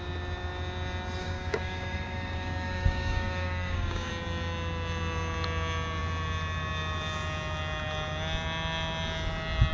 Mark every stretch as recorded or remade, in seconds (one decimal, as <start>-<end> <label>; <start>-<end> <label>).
0.0-1.2 recorded; 1.2-4.1 remade; 4.1-9.7 recorded